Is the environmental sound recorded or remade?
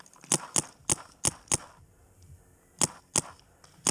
recorded